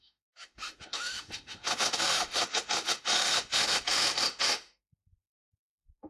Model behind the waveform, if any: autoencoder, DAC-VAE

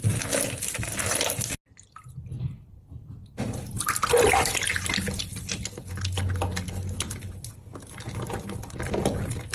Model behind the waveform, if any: none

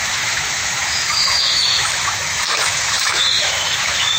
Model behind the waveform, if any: autoencoder, DAC-VAE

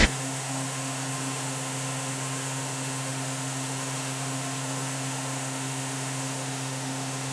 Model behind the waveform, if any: autoencoder, DAC-VAE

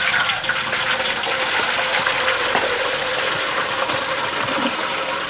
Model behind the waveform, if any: none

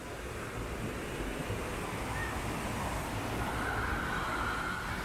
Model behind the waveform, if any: none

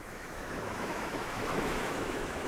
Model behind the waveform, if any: autoencoder, DAC-VAE